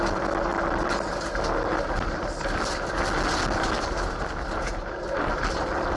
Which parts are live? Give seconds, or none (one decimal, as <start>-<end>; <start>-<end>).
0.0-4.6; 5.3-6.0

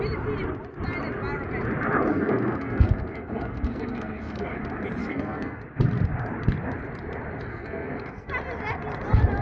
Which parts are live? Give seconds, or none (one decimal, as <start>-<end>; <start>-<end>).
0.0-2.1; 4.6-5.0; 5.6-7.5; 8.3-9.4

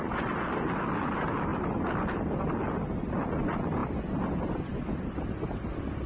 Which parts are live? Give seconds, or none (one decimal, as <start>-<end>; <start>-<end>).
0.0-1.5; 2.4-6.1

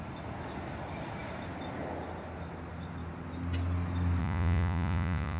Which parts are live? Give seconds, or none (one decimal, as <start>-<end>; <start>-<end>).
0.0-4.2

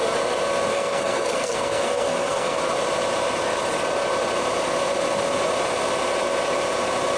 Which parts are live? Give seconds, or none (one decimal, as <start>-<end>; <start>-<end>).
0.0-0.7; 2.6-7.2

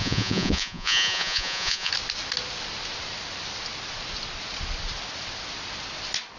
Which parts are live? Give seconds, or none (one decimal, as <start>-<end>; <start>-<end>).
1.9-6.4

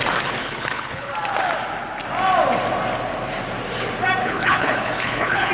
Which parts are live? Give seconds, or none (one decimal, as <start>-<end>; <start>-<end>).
0.0-0.4; 1.1-4.2

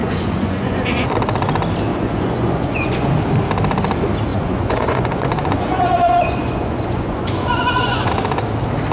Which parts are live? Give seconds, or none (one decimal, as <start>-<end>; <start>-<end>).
1.1-1.9; 3.1-4.3; 8.1-8.9